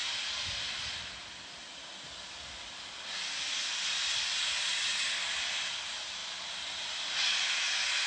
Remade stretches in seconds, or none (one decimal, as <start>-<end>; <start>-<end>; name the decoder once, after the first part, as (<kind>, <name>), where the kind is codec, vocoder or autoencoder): 6.2-7.0 (vocoder, BigVGAN v2)